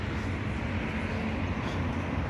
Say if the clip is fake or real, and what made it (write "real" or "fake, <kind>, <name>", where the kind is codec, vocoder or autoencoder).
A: real